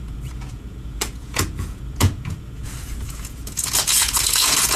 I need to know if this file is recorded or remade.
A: remade